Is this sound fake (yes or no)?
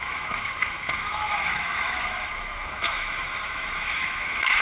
yes